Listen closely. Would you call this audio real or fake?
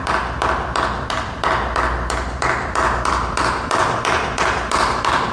fake